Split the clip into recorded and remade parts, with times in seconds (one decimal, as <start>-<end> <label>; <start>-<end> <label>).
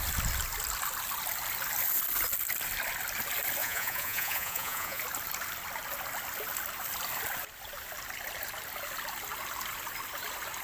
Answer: 0.0-3.6 recorded; 3.6-5.0 remade; 5.0-10.6 recorded